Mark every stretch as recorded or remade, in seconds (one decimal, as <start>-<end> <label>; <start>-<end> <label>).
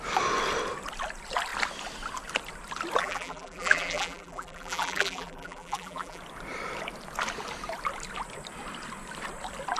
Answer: 0.0-3.0 recorded; 3.0-6.2 remade; 6.2-9.8 recorded